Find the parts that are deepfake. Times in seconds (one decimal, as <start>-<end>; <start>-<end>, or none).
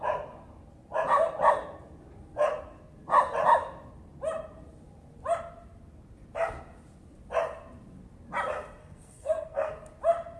8.8-9.7